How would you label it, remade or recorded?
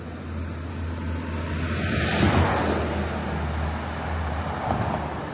recorded